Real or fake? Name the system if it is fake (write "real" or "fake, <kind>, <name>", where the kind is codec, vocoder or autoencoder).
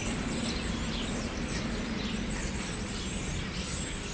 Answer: real